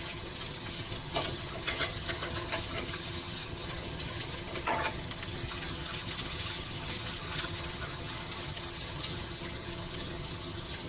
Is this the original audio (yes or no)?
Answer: no